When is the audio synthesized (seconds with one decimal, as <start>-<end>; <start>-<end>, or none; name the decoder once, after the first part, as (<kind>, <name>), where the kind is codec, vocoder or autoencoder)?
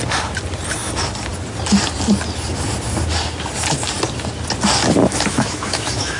5.0-6.2 (autoencoder, DAC-VAE)